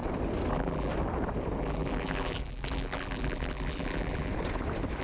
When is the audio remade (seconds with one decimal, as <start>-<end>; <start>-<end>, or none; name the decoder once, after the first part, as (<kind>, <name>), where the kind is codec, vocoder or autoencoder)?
0.5-0.9 (vocoder, BigVGAN v2); 1.6-4.3